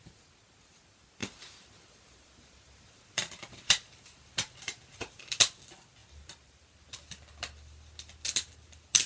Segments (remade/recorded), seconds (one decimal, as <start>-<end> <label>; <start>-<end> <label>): 0.0-1.2 recorded; 1.2-5.4 remade; 5.4-6.0 recorded; 6.0-6.7 remade; 6.7-9.1 recorded